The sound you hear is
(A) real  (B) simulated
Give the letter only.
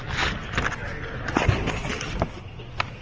A